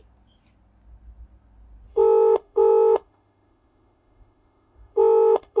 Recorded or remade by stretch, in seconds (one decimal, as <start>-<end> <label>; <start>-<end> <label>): 0.0-1.9 recorded; 1.9-5.6 remade